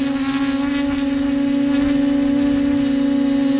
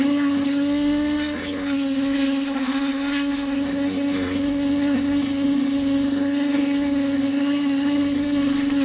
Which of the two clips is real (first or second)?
first